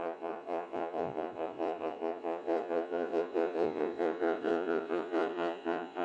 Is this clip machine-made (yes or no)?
yes